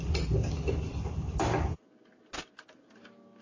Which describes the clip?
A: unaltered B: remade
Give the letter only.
A